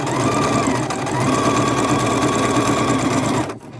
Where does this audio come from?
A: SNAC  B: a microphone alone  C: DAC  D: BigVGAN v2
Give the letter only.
B